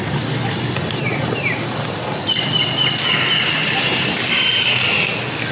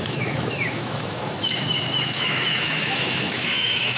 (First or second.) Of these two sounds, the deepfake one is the second